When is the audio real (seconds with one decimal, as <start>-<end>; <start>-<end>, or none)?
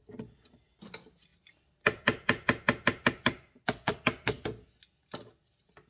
0.0-5.9